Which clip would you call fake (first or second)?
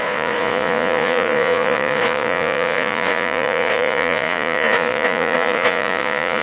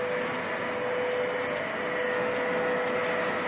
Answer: first